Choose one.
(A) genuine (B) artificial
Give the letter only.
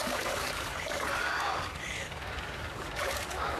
B